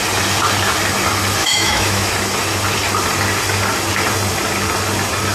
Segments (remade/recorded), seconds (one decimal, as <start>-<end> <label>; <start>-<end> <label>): 0.0-1.4 recorded; 1.4-2.1 remade; 2.1-5.3 recorded